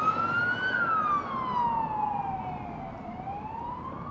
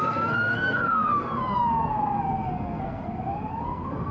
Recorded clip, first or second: first